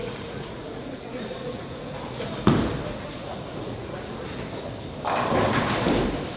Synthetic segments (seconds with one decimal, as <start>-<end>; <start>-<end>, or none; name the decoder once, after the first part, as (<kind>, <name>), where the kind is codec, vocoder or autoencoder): 0.0-2.2 (vocoder, Vocos); 3.2-4.2